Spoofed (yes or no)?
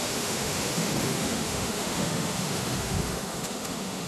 yes